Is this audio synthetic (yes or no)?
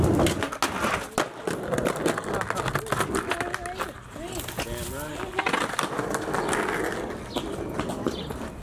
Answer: no